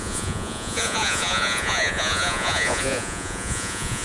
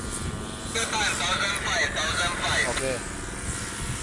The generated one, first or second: first